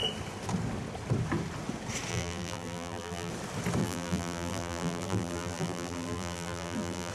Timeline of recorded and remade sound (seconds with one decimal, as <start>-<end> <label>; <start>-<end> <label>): 0.0-2.1 recorded; 2.1-3.3 remade; 3.3-3.8 recorded; 3.8-7.1 remade